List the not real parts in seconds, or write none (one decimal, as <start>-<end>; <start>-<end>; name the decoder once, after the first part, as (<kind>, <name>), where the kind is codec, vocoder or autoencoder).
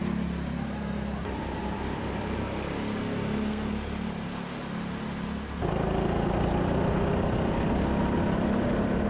3.0-3.7 (codec, SNAC)